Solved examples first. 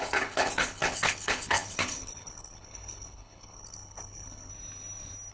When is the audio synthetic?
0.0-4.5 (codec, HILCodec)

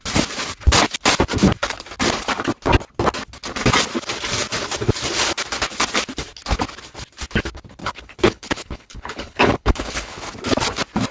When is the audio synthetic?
7.8-10.2 (codec, HILCodec)